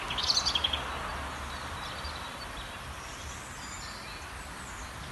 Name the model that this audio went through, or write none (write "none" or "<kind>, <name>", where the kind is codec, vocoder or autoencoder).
none